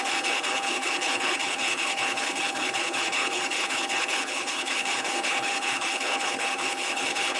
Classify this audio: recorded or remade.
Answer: remade